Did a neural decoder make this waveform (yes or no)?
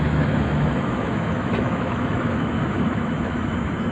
yes